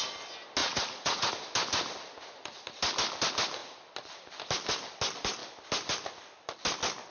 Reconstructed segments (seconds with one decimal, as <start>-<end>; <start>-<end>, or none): 0.6-1.3